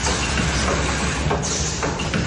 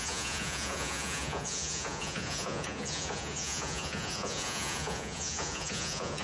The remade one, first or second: second